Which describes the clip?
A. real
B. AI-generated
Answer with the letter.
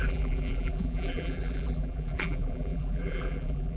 B